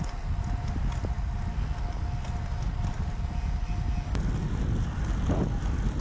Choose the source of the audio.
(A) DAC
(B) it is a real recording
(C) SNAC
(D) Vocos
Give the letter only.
B